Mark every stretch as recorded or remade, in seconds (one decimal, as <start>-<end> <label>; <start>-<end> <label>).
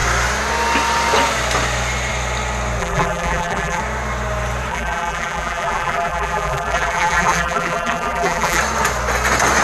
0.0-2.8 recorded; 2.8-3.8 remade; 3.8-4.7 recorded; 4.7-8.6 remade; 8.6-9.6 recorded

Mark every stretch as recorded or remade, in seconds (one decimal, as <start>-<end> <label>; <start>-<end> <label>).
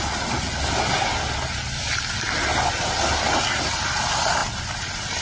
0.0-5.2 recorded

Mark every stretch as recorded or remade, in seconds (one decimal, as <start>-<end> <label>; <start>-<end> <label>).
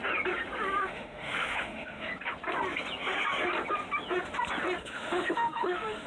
0.0-0.8 recorded; 0.8-2.1 remade; 2.1-4.8 recorded; 4.8-6.1 remade